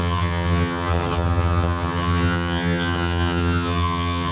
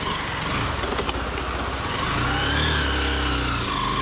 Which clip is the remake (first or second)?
first